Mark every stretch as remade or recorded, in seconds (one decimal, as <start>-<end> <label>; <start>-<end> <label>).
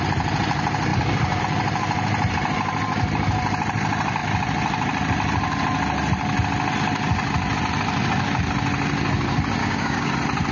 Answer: 0.0-9.6 recorded; 9.6-10.1 remade; 10.1-10.5 recorded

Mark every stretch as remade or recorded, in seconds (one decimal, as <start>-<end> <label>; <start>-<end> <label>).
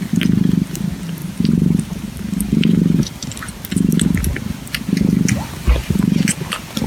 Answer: 0.0-1.2 recorded; 1.2-2.2 remade; 2.2-6.9 recorded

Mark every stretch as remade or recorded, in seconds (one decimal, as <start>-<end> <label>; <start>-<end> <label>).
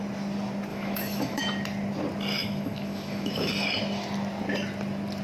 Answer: 0.0-0.7 recorded; 0.7-1.4 remade; 1.4-2.4 recorded; 2.4-3.5 remade; 3.5-5.2 recorded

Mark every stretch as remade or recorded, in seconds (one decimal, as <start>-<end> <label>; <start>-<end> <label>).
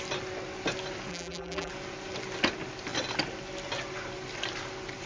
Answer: 0.0-1.1 recorded; 1.1-1.7 remade; 1.7-5.1 recorded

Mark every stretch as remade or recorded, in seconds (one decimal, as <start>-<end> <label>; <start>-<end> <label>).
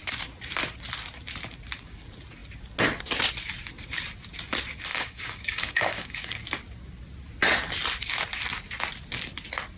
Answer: 0.0-4.9 recorded; 4.9-6.4 remade; 6.4-9.8 recorded